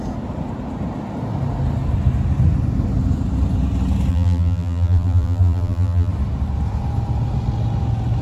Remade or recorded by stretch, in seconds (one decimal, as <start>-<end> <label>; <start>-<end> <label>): 0.0-4.1 recorded; 4.1-6.1 remade; 6.1-8.2 recorded